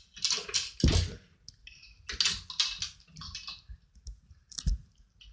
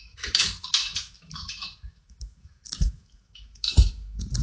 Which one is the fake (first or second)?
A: second